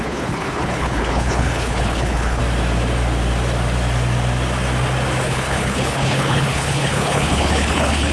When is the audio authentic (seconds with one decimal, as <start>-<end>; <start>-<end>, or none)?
2.4-5.2